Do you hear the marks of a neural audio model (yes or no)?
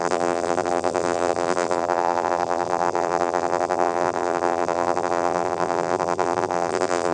yes